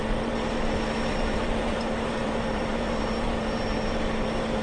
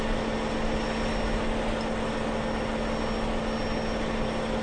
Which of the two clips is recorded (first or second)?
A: second